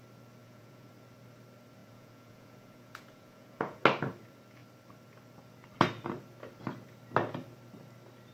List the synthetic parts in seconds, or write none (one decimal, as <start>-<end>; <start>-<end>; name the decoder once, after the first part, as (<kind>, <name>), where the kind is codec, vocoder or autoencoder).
0.4-0.9 (vocoder, Vocos); 1.8-3.8

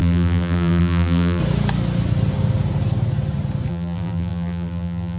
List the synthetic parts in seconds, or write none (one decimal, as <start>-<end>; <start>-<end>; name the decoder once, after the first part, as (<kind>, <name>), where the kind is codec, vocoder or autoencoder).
0.0-1.4 (vocoder, BigVGAN v2); 3.7-5.2

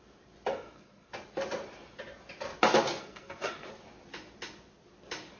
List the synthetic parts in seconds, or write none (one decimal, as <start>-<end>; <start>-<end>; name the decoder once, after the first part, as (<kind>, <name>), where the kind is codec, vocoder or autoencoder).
0.5-1.1 (codec, SNAC); 3.0-3.7